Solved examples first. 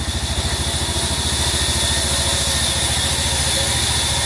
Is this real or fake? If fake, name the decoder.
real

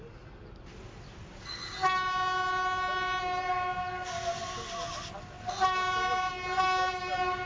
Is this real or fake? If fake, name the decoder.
real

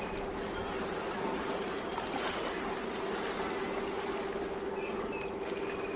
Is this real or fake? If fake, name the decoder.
real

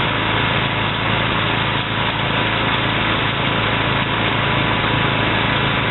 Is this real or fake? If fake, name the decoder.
real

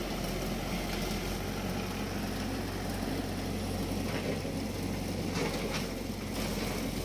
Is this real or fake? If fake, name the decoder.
real